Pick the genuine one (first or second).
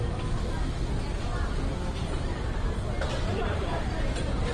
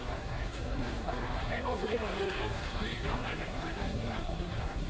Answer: first